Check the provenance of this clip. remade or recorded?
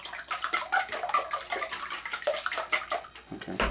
recorded